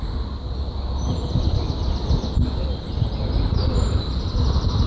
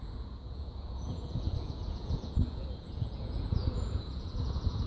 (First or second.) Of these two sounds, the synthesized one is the second